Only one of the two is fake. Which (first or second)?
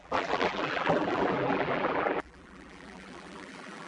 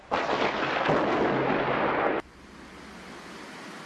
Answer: first